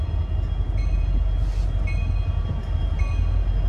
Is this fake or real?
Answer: real